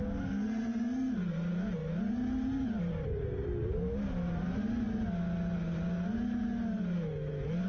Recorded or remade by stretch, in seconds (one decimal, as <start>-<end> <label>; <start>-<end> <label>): 0.0-7.7 recorded